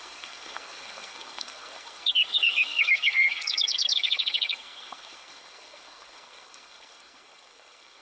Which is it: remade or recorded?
remade